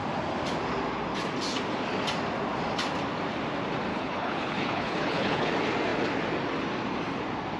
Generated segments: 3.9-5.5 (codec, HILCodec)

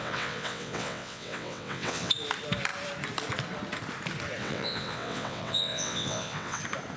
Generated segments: 0.0-2.1 (vocoder, WaveNeXt); 4.4-6.6